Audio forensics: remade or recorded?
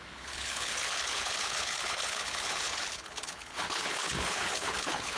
remade